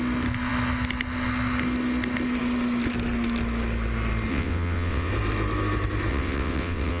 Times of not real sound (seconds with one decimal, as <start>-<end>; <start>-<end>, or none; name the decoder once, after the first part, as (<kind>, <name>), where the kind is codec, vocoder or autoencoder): 4.3-5.1 (vocoder, WaveNeXt); 6.1-7.0